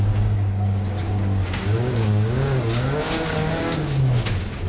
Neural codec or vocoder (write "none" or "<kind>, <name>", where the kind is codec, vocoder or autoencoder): codec, DAC